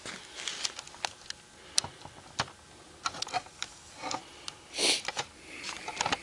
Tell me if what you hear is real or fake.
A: real